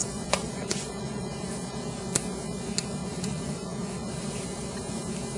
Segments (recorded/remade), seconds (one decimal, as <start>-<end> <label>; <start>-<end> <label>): 0.0-1.4 remade; 1.4-3.0 recorded; 3.0-4.1 remade; 4.1-5.4 recorded